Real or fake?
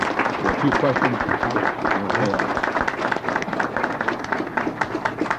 real